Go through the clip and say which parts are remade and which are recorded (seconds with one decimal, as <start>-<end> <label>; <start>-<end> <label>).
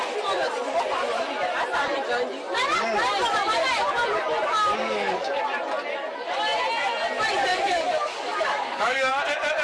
0.0-4.8 recorded; 4.8-5.4 remade; 5.4-7.5 recorded; 7.5-9.1 remade; 9.1-9.6 recorded